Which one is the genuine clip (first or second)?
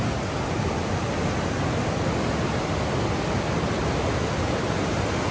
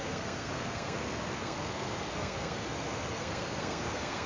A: first